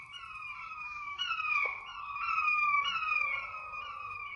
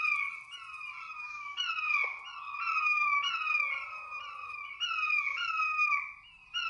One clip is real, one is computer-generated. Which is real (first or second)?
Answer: second